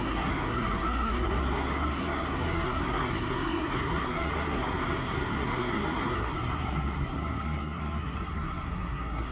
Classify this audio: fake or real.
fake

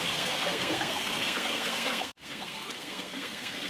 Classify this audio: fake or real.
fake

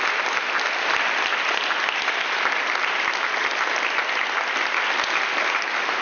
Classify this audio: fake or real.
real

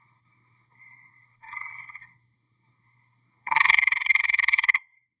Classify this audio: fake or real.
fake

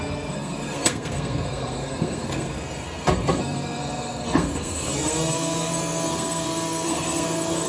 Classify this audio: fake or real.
fake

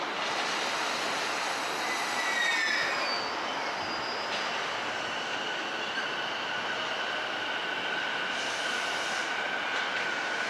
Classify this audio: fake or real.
real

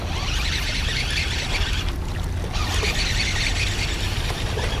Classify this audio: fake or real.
real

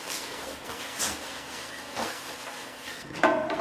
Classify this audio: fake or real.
fake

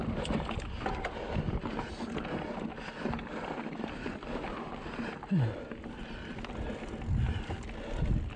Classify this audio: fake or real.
real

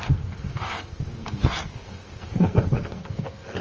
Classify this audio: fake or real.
fake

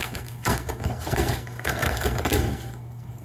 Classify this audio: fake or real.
fake